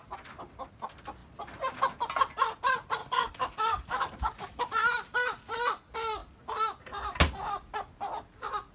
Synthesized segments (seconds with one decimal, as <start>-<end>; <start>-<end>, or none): 3.0-4.7